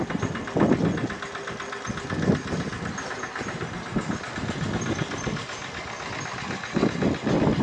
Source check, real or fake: real